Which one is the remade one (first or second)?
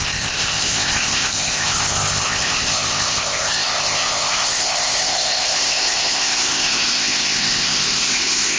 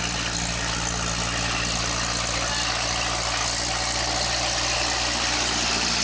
first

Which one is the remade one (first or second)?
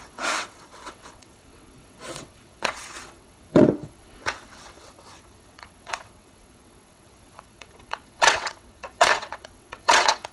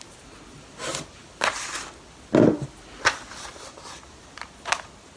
first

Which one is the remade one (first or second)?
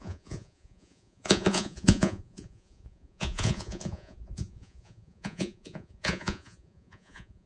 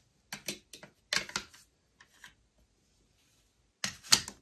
first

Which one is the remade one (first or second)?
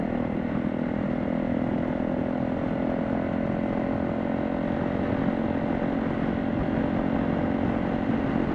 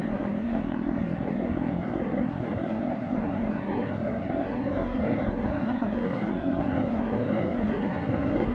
second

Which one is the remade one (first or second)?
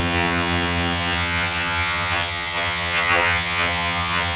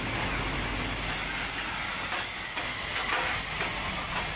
first